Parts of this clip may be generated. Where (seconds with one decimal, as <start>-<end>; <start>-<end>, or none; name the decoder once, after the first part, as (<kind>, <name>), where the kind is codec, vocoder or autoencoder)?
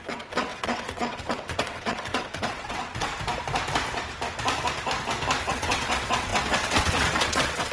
0.0-3.1 (vocoder, WaveNeXt); 5.4-7.7